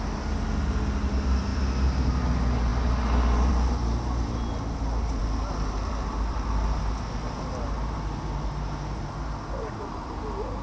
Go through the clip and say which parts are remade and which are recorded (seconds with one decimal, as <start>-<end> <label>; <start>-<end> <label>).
0.0-1.5 recorded; 1.5-2.2 remade; 2.2-5.2 recorded; 5.2-6.8 remade; 6.8-10.6 recorded